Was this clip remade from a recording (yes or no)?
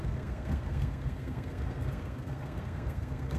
yes